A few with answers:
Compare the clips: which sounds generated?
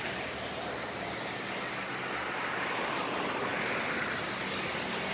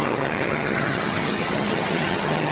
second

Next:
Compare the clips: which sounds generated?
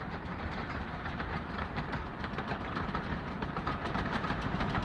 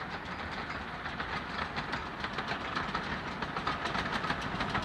first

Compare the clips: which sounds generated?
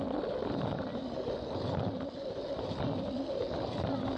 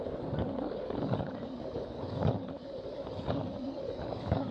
second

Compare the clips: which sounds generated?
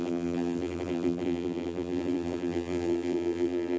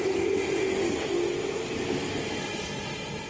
first